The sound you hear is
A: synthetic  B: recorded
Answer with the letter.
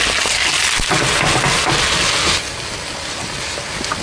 B